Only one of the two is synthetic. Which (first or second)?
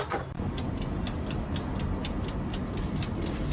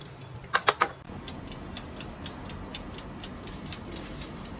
first